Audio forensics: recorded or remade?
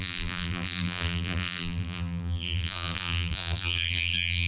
remade